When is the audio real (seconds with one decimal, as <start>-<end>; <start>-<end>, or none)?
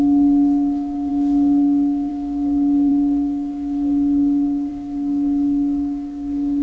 none